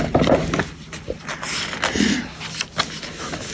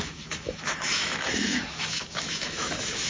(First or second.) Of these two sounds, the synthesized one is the second